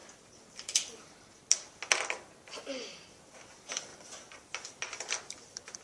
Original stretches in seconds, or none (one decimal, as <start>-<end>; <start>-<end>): 0.0-5.8